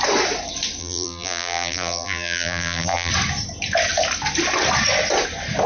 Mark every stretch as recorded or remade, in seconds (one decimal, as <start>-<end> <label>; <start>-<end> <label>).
0.0-0.8 recorded; 0.8-3.1 remade; 3.1-5.7 recorded

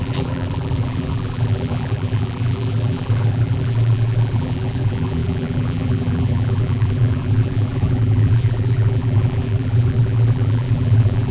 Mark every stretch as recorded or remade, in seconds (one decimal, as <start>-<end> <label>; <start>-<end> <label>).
0.0-11.3 remade